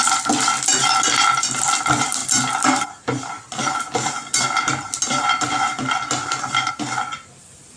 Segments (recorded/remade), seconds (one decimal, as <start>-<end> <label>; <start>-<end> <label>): 0.0-7.8 recorded